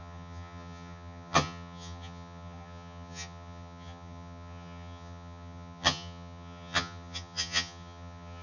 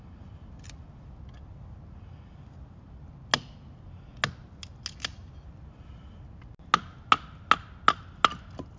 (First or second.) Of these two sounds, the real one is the second